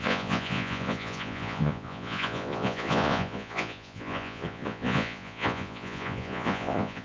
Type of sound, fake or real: fake